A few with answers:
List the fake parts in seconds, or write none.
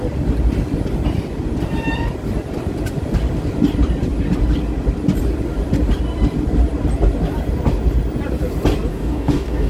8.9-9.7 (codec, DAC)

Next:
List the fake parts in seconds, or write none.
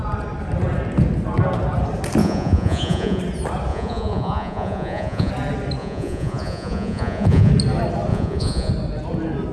2.2-3.2 (vocoder, Vocos); 3.7-5.3; 5.8-7.5; 8.1-8.7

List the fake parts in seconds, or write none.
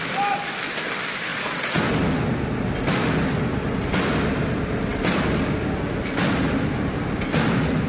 1.3-1.8 (vocoder, Vocos)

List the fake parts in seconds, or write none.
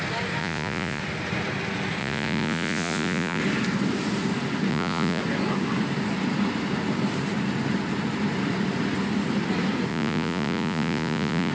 0.4-1.0 (vocoder, Vocos); 2.0-3.4; 4.7-5.2; 9.9-11.5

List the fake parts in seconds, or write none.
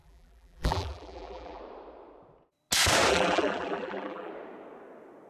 0.0-1.6 (vocoder, BigVGAN v2); 3.1-4.3